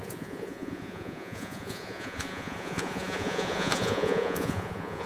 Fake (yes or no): yes